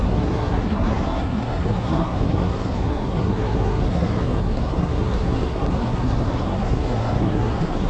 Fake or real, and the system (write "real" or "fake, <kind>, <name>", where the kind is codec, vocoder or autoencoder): fake, codec, SNAC